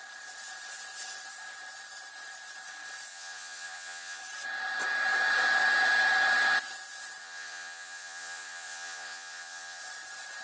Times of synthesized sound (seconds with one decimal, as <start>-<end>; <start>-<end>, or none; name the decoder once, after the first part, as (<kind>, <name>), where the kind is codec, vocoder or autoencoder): 3.1-4.2 (vocoder, Vocos); 7.2-9.8